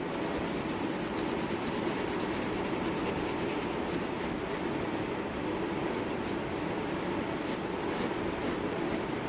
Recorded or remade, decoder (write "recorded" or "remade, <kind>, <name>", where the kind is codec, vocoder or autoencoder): recorded